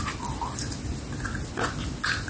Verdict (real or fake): real